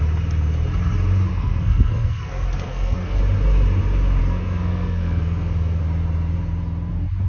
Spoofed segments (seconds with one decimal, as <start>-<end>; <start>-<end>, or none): 1.3-3.2; 4.2-5.8